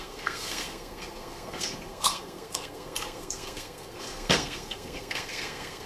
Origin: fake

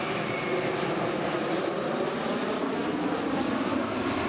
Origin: real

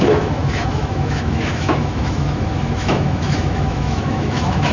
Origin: fake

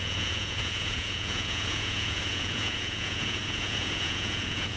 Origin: fake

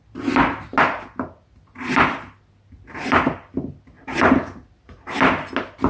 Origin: real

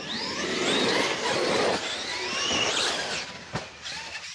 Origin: real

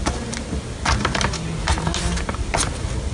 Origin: real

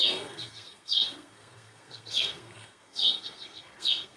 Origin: fake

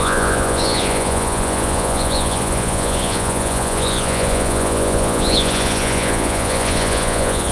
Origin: fake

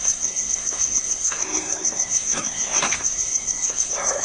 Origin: fake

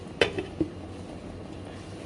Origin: real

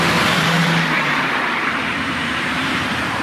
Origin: fake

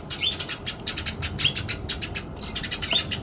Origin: real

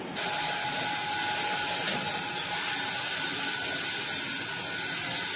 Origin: real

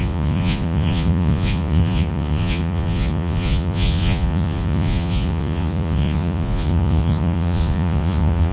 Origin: fake